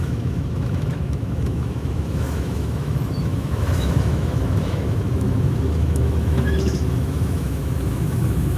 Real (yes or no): no